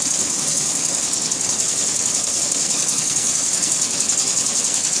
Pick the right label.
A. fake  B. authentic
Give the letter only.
A